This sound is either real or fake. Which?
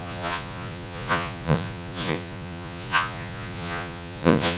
fake